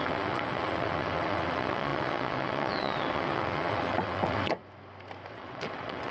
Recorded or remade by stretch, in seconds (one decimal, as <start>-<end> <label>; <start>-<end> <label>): 0.0-4.6 remade; 4.6-5.3 recorded; 5.3-6.1 remade